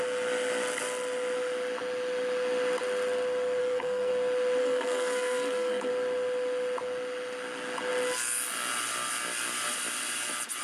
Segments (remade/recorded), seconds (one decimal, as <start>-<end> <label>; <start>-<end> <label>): 0.0-3.6 recorded; 3.6-4.1 remade; 4.1-4.6 recorded; 4.6-5.9 remade; 5.9-10.6 recorded